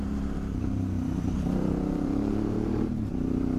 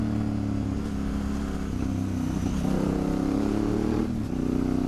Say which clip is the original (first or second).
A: second